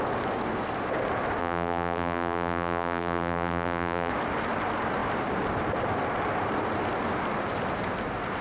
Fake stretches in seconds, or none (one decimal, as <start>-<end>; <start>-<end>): 1.4-4.1